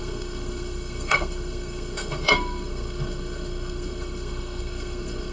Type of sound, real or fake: fake